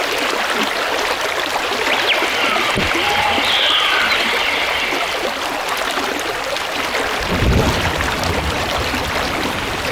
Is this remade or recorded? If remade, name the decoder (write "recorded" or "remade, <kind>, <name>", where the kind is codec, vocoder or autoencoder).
recorded